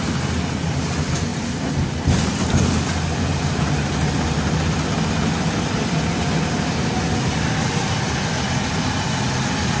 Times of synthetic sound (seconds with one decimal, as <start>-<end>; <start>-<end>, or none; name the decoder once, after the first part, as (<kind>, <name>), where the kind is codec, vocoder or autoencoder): none